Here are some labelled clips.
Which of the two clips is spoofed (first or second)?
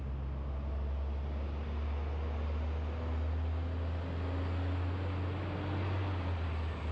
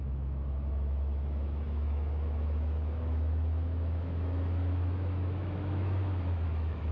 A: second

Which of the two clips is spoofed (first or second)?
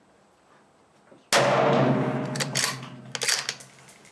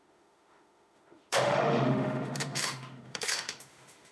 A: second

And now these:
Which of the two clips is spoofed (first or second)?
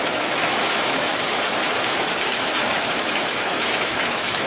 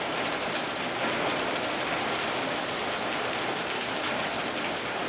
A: first